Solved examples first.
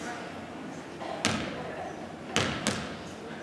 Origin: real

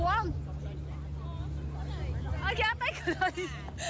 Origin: real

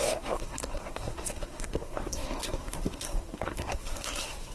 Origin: fake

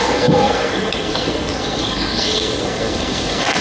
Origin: fake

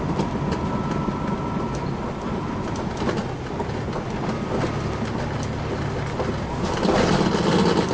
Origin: real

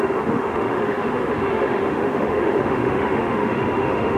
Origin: fake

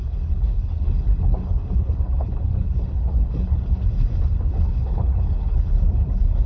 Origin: fake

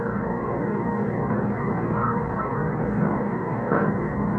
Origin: fake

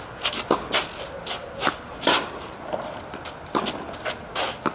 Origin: real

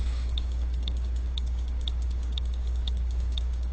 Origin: fake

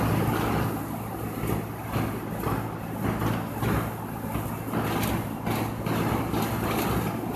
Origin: real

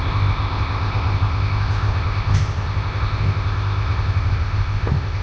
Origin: fake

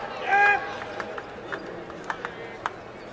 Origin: real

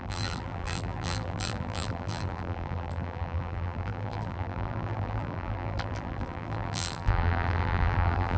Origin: fake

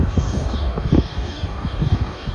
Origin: fake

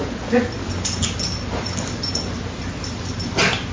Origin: real